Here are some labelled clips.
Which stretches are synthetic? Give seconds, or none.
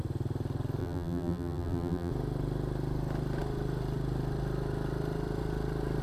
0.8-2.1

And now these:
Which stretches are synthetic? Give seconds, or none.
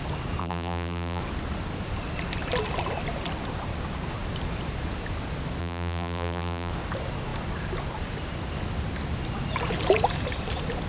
0.4-1.2; 5.6-6.7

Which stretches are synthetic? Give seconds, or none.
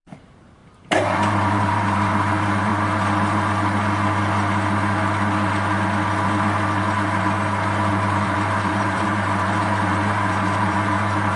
0.0-2.7; 7.9-11.4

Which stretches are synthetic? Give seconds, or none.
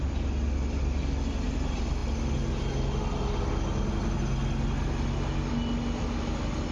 none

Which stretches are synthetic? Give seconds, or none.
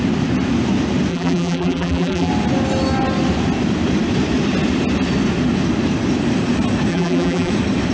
1.1-2.3; 6.9-7.5